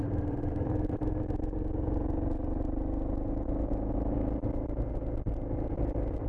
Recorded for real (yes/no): no